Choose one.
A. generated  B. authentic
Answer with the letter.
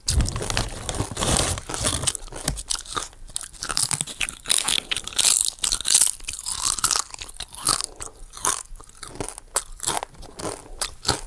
B